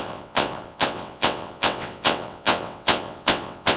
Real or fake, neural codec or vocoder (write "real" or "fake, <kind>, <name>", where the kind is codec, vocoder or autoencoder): fake, vocoder, WaveNeXt